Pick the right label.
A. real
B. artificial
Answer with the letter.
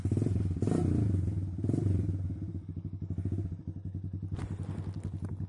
A